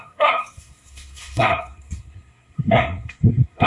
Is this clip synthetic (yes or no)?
yes